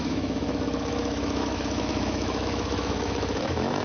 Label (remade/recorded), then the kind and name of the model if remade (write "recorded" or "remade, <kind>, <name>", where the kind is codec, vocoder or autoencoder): remade, autoencoder, DAC-VAE